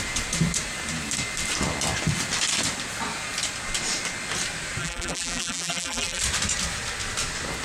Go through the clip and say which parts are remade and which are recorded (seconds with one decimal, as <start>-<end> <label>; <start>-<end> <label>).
0.0-4.8 recorded; 4.8-6.2 remade; 6.2-7.6 recorded